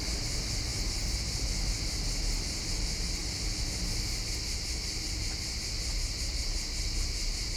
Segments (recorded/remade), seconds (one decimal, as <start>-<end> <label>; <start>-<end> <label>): 0.0-7.6 recorded